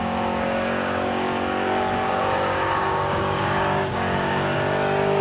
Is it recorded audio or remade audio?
remade